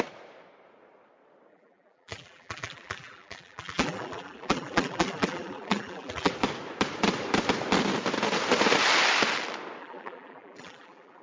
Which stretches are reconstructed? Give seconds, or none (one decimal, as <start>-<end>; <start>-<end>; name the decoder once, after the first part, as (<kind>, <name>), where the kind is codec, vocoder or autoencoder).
1.5-6.3 (vocoder, BigVGAN v2); 9.8-11.2